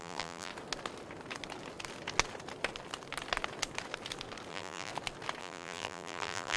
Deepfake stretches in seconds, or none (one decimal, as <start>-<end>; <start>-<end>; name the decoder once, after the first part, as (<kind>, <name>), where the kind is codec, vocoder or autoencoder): 0.0-0.5 (vocoder, BigVGAN v2); 4.5-4.9; 5.4-6.6